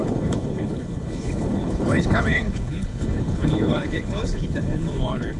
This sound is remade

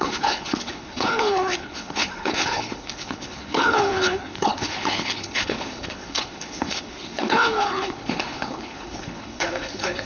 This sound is remade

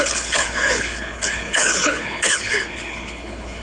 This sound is remade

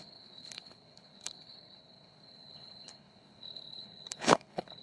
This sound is remade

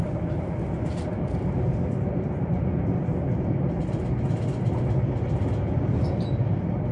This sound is recorded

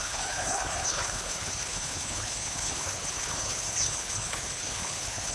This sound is remade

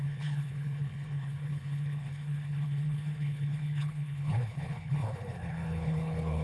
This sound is remade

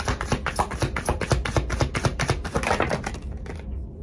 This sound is recorded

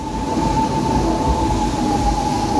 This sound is recorded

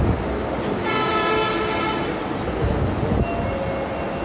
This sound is recorded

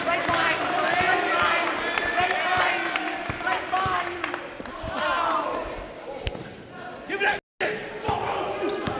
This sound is recorded